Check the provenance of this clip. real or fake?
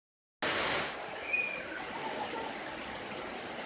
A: real